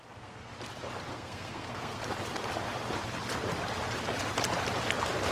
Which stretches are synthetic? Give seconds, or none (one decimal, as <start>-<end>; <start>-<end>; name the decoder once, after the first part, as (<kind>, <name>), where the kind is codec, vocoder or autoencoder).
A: 0.0-0.5 (codec, SNAC); 1.1-2.0